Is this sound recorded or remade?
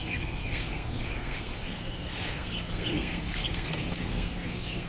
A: remade